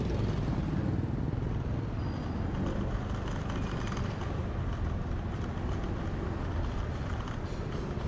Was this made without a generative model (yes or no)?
yes